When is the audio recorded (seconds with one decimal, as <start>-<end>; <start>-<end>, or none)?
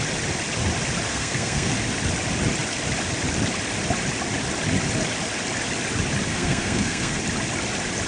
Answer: 0.0-1.1; 1.7-6.3; 7.2-8.1